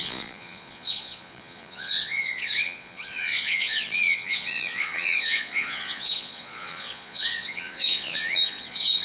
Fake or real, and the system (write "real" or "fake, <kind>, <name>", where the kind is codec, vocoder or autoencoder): fake, vocoder, Vocos